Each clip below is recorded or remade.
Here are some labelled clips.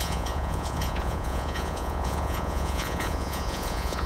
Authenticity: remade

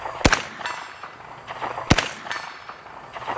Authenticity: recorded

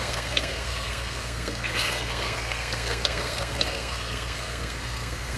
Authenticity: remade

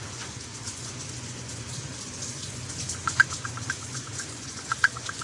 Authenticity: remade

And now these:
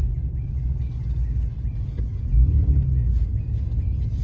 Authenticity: recorded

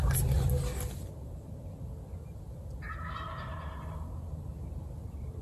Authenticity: recorded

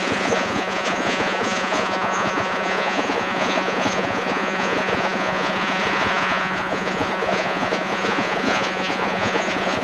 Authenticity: remade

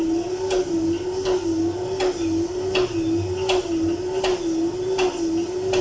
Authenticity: recorded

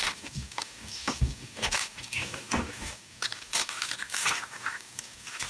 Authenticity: remade